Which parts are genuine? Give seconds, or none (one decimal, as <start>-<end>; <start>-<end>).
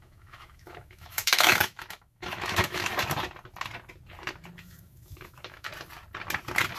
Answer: 2.9-4.6; 5.7-6.8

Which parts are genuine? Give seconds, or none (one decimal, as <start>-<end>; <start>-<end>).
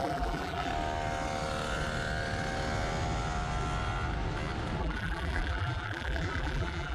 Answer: 0.7-4.8